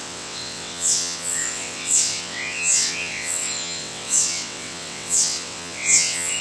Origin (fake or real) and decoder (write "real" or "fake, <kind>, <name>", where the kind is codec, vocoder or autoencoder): fake, vocoder, WaveNeXt